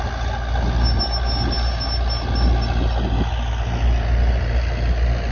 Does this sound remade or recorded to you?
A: recorded